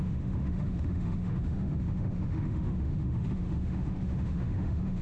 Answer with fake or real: fake